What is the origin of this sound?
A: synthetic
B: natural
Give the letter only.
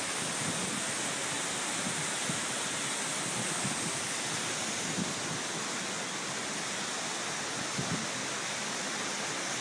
B